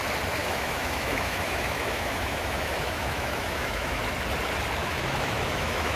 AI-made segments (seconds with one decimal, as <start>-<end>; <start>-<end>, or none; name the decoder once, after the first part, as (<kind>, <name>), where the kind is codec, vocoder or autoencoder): 0.4-4.0 (autoencoder, DAC-VAE); 4.8-6.0